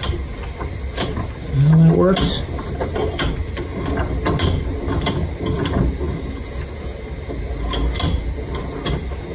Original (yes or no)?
yes